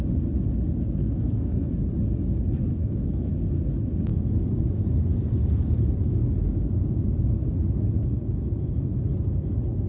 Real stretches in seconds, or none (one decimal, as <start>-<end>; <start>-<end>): 0.0-1.0; 1.7-2.7; 3.3-9.9